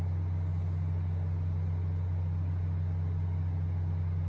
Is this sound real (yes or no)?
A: yes